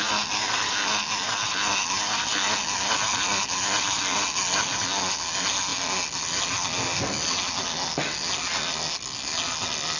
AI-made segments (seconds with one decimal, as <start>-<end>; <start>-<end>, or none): none